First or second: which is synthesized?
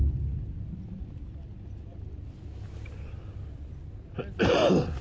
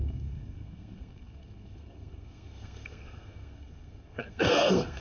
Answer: second